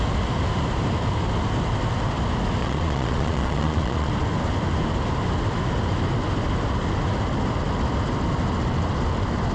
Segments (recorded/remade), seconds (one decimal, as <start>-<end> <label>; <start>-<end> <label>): 0.0-2.6 recorded; 2.6-4.1 remade; 4.1-9.5 recorded